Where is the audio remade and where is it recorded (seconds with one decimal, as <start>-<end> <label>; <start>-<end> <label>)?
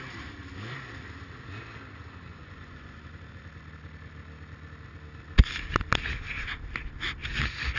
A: 0.0-2.3 recorded; 2.3-3.1 remade; 3.1-7.8 recorded